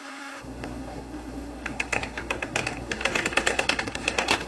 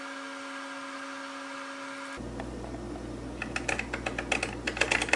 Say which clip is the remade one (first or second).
first